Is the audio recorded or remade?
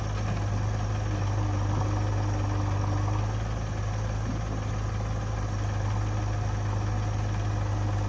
recorded